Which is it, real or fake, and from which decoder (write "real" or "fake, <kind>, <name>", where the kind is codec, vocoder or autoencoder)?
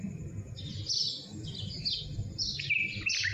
real